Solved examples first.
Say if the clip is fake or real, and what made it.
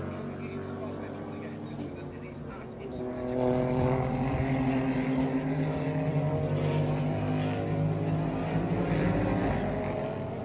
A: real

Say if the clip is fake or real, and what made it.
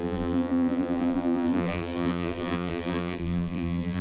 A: fake, vocoder, BigVGAN v2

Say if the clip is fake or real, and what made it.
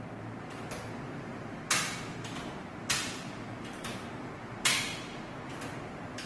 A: real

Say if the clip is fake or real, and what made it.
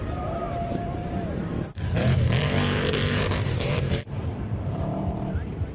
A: fake, vocoder, BigVGAN v2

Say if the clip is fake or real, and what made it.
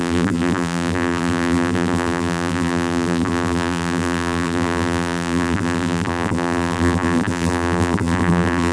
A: fake, vocoder, BigVGAN v2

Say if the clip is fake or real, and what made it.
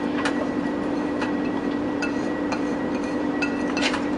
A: fake, vocoder, BigVGAN v2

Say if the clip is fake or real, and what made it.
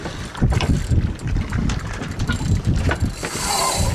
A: fake, vocoder, BigVGAN v2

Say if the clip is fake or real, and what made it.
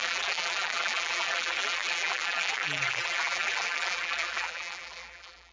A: fake, vocoder, BigVGAN v2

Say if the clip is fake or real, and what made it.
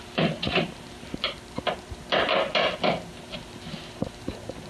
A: real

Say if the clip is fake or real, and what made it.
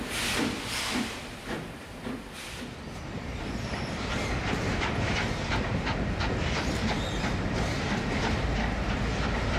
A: fake, vocoder, BigVGAN v2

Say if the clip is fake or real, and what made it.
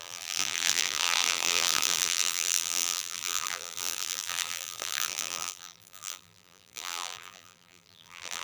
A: fake, vocoder, BigVGAN v2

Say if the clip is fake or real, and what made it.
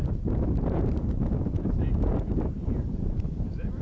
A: fake, vocoder, BigVGAN v2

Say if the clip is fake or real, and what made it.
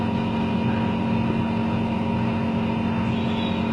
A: real